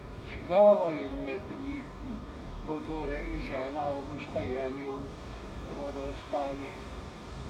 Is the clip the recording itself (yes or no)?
no